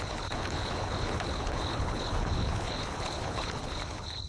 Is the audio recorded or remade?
remade